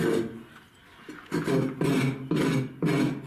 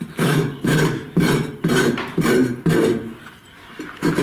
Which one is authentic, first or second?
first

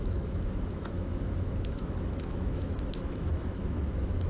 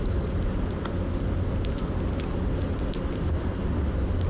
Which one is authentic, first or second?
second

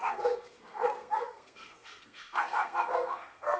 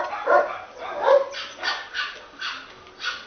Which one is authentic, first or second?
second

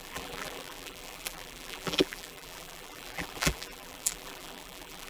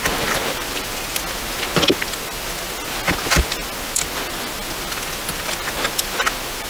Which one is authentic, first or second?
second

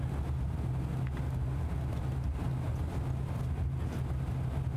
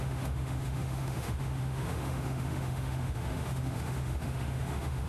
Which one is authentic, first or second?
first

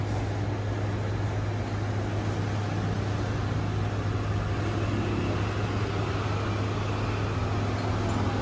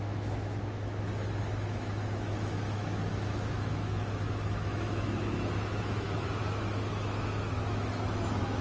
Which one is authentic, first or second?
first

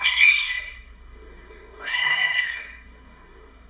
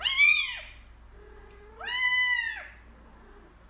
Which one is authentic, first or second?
second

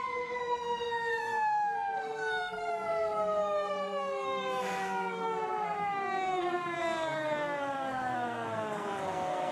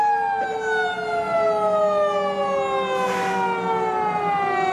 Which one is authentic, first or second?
second